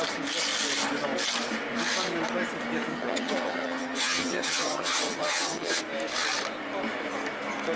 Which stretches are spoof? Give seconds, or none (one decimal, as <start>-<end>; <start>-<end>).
2.9-5.8